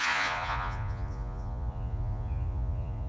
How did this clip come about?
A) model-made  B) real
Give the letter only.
A